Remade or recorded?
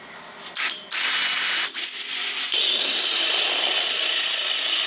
recorded